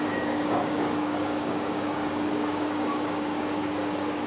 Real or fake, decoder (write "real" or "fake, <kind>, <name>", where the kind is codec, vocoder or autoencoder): fake, codec, DAC